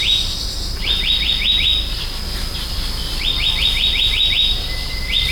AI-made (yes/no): no